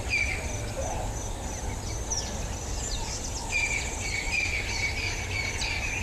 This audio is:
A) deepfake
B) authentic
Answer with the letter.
B